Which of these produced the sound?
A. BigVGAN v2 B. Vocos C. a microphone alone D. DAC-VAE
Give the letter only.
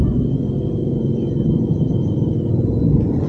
C